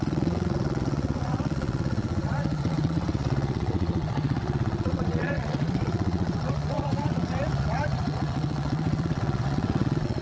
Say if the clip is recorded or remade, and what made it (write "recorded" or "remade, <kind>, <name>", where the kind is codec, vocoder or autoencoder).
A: remade, vocoder, WaveNeXt